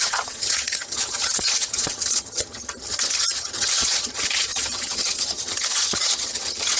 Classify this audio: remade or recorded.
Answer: remade